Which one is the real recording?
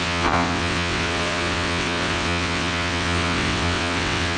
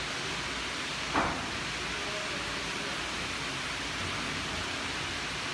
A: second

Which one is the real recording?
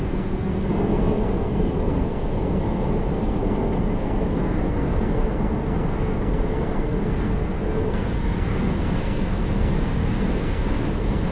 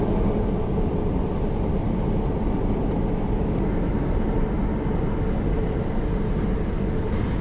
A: second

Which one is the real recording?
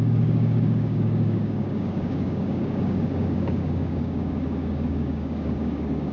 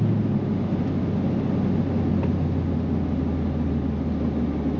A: second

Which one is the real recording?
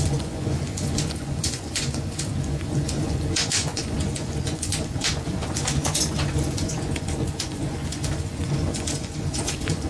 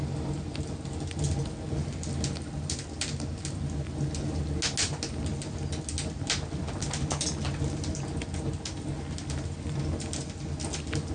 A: second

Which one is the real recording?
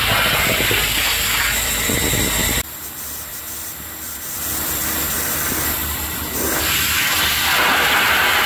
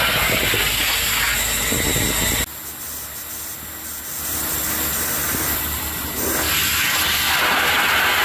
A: second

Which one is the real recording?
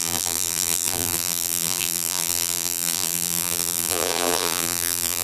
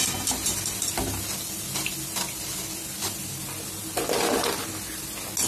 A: second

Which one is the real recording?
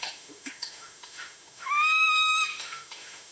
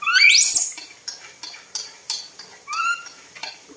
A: second